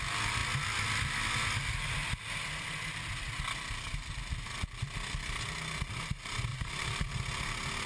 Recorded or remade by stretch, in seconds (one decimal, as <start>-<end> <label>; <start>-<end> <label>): 0.0-6.5 recorded; 6.5-7.1 remade; 7.1-7.9 recorded